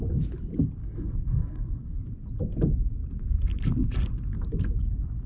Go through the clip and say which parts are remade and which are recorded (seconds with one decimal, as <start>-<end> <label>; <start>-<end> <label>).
0.0-0.8 recorded; 0.8-2.0 remade; 2.0-5.3 recorded